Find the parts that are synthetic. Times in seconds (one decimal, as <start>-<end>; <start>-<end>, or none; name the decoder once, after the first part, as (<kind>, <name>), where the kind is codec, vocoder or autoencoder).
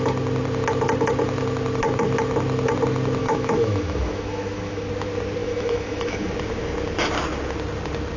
3.2-4.9 (autoencoder, DAC-VAE); 5.4-6.3